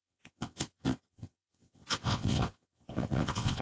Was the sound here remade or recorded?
remade